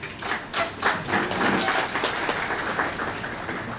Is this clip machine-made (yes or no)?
no